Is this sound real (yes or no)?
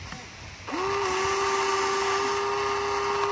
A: yes